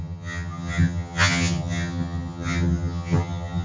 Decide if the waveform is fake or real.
fake